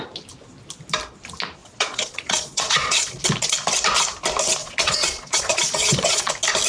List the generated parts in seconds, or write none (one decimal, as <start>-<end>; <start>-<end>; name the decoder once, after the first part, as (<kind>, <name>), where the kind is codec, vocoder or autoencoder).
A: 1.6-3.2 (vocoder, Vocos); 4.6-6.3